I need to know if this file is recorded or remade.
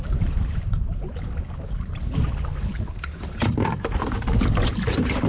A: remade